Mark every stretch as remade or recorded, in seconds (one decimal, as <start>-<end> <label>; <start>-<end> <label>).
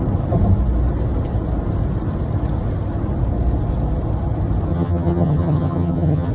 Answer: 0.0-4.7 recorded; 4.7-6.3 remade